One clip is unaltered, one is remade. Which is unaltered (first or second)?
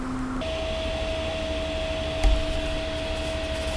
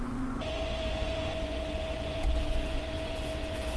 first